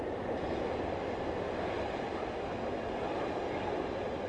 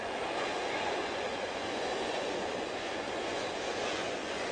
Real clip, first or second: first